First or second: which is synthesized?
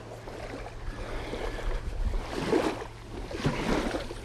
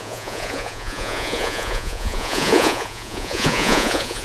second